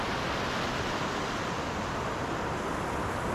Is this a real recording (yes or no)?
yes